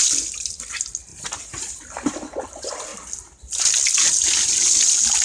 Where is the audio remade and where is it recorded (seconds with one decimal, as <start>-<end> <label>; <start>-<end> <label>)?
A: 0.0-5.2 recorded